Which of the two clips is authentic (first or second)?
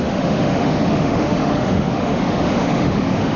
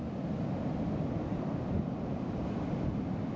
second